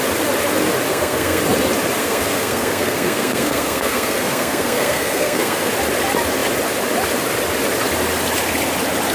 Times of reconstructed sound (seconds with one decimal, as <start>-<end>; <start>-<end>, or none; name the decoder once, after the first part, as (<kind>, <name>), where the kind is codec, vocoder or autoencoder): 0.9-1.4 (codec, SNAC); 2.0-5.7